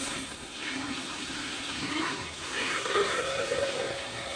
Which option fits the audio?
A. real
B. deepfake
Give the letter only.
B